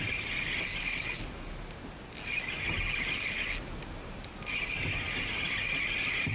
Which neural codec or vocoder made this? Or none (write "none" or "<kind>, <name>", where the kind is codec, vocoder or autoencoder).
none